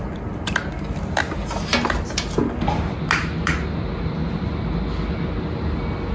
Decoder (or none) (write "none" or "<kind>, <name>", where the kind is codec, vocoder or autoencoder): none